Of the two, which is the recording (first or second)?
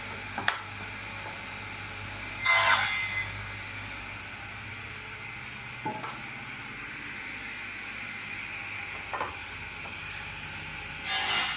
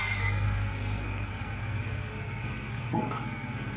first